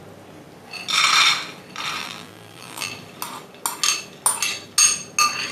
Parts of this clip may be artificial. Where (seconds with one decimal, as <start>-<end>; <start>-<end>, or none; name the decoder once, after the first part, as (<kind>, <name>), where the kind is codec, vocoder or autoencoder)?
2.0-2.9 (vocoder, BigVGAN v2)